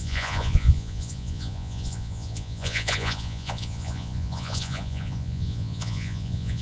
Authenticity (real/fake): fake